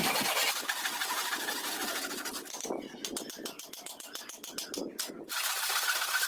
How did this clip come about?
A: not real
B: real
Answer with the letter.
B